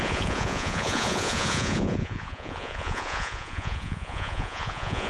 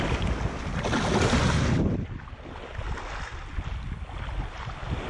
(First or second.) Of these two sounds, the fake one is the first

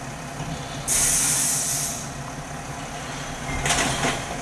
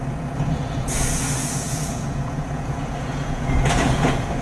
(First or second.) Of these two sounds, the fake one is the second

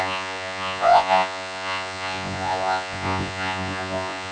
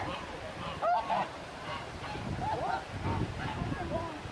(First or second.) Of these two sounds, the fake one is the first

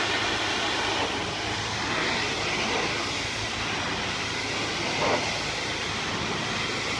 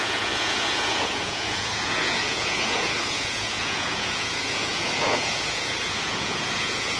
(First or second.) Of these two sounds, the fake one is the second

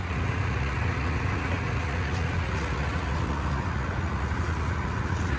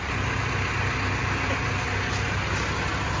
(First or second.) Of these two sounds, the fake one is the first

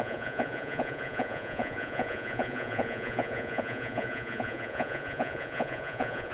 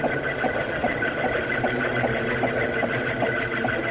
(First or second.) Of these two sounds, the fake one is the first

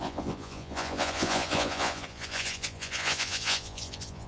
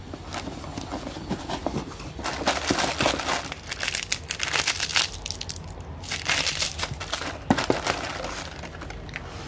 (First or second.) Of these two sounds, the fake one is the first